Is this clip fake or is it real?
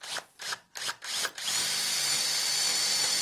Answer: fake